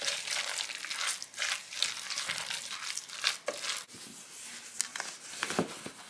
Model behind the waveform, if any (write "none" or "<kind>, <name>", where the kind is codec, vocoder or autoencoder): none